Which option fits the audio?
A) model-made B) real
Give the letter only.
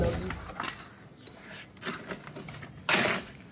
B